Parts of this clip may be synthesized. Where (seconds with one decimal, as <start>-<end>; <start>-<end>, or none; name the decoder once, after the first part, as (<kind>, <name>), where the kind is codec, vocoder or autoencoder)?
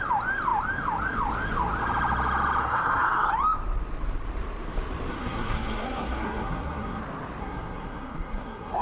2.6-3.3 (codec, SNAC); 5.1-7.0; 7.4-8.8